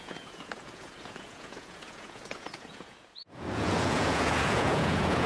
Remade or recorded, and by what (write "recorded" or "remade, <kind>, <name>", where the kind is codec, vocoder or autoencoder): remade, vocoder, Vocos